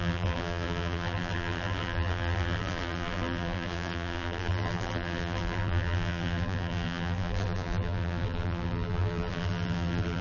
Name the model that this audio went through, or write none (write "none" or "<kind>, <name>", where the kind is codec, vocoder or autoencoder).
vocoder, BigVGAN v2